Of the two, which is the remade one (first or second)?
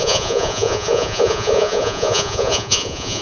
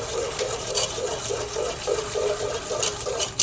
first